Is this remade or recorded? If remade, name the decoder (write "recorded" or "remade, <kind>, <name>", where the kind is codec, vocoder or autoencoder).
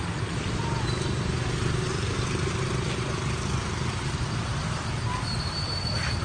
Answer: recorded